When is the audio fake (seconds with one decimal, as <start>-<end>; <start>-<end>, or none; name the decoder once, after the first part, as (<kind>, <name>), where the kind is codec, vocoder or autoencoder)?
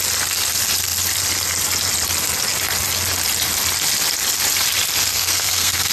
5.0-5.9 (codec, SNAC)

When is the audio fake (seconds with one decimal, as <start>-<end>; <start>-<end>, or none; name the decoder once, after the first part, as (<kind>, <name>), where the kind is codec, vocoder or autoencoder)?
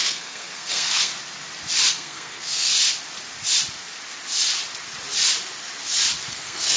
0.0-1.1 (codec, SNAC); 1.9-2.7; 6.3-6.8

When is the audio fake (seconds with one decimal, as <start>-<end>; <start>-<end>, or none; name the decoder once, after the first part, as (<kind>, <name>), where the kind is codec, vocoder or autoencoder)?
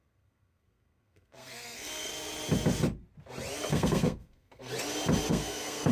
0.0-2.1 (codec, SNAC); 3.7-4.7; 5.3-5.9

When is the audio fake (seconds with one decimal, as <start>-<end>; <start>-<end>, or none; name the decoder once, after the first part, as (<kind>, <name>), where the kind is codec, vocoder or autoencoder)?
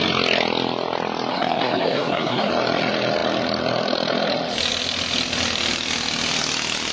1.3-2.5 (codec, SNAC)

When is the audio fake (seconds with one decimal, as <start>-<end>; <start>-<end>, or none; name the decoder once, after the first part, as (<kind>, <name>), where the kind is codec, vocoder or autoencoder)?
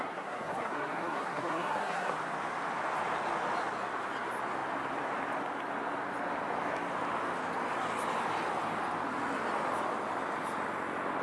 0.0-2.1 (codec, SNAC)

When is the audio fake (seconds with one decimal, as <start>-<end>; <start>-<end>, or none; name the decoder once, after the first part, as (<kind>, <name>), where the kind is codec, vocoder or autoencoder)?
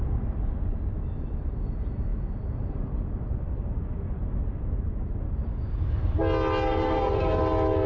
6.7-7.4 (codec, SNAC)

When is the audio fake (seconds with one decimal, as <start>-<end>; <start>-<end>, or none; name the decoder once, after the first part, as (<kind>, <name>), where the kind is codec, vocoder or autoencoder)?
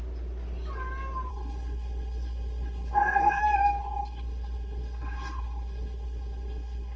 1.3-3.4 (codec, SNAC); 3.8-7.0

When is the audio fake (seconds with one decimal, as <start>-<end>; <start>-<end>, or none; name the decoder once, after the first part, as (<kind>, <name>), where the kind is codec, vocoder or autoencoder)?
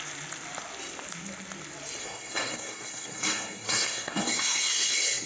2.0-5.3 (codec, SNAC)